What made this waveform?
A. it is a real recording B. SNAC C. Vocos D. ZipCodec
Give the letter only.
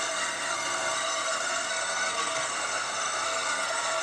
B